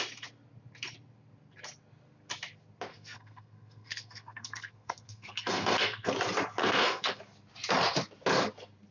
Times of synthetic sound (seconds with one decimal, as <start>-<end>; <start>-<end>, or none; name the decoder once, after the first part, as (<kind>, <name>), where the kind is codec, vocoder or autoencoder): 2.9-6.1 (codec, SNAC); 6.6-7.2